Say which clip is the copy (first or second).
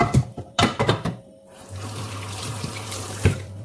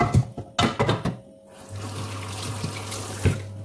first